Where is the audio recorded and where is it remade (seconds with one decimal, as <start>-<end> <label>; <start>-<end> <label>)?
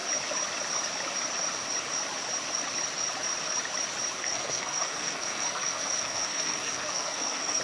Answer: 0.0-4.2 recorded; 4.2-7.6 remade